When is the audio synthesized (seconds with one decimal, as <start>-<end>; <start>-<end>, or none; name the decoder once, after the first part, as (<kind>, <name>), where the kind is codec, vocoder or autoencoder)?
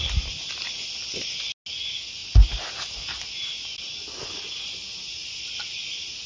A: none